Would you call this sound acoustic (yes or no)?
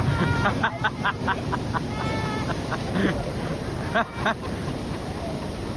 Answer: yes